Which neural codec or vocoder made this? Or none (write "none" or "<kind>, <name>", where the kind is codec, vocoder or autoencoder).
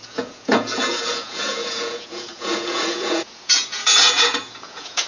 vocoder, Vocos